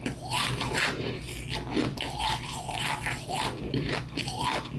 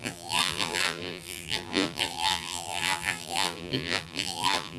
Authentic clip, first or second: first